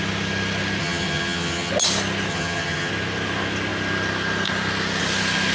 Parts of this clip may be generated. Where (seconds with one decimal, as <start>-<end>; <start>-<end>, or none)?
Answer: 0.8-1.7; 2.3-2.9